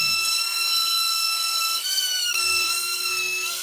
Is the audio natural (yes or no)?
no